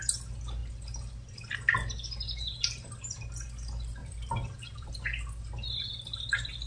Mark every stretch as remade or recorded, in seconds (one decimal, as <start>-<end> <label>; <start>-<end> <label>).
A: 0.0-4.0 recorded; 4.0-4.9 remade; 4.9-6.7 recorded